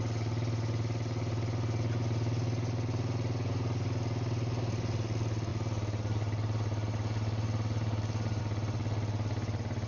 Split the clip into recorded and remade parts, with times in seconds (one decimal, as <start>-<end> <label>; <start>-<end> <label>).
0.0-9.9 recorded